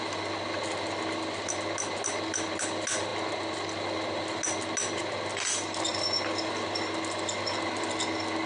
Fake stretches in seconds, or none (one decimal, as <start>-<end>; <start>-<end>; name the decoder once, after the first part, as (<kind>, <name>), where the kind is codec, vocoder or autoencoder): none